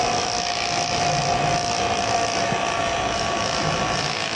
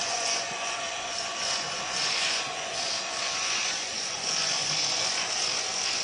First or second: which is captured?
first